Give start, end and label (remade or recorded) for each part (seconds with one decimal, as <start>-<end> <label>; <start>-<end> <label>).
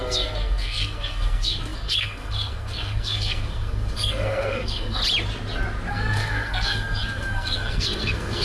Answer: 0.0-5.0 remade; 5.0-5.9 recorded; 5.9-8.4 remade